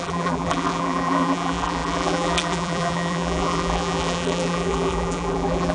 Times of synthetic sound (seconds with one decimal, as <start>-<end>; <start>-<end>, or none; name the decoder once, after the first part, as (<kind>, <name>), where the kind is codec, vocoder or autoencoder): 0.0-5.7 (vocoder, BigVGAN v2)